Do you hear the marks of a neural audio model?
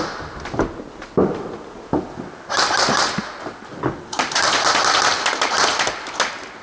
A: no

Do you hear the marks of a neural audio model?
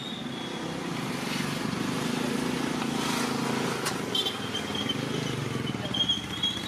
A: no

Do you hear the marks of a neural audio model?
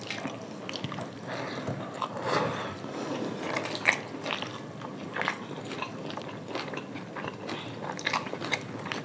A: no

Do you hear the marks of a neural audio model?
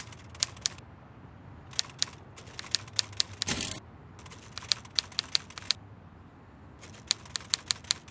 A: no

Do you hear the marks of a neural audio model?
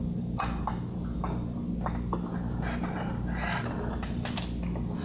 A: no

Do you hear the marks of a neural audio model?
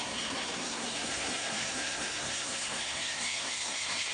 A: yes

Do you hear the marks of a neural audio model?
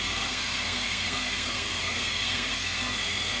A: yes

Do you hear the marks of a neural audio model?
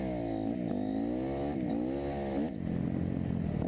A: no